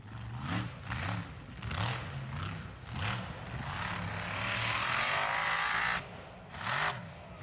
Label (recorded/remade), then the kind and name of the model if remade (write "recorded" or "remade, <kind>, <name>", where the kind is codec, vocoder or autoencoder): recorded